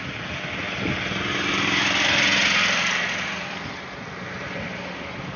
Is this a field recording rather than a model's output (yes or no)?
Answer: yes